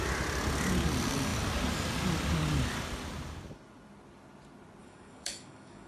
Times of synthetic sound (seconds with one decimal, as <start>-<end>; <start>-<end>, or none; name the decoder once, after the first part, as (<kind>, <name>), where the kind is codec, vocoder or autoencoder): 4.8-5.9 (codec, DAC)